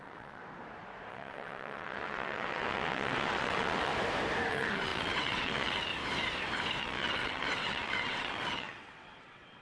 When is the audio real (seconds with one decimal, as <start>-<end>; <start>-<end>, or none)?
0.4-1.1; 3.9-4.5; 5.9-6.8